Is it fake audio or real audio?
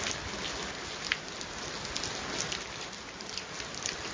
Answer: real